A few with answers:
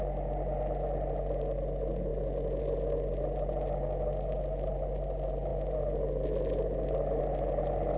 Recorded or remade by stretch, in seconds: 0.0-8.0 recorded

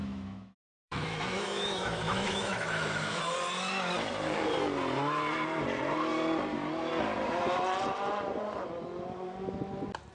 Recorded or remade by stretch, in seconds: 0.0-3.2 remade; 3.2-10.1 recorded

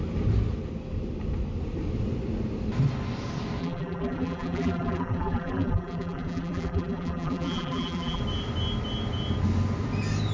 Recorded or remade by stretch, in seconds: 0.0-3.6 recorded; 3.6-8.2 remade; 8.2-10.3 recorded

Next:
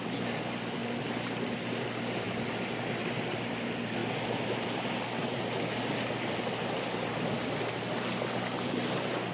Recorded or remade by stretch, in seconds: 0.0-9.3 recorded

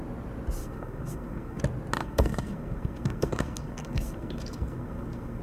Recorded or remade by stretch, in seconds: 0.0-0.6 recorded; 0.6-1.6 remade; 1.6-2.0 recorded; 2.0-5.4 remade

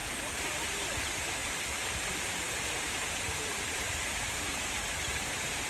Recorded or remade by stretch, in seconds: 0.0-0.6 remade; 0.6-1.4 recorded; 1.4-4.6 remade; 4.6-5.7 recorded

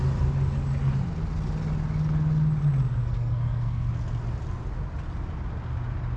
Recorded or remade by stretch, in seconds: 0.0-3.0 recorded; 3.0-3.9 remade; 3.9-6.2 recorded

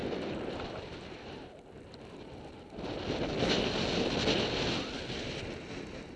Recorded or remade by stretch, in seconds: 0.0-6.2 recorded